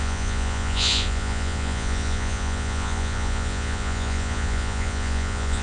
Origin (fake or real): fake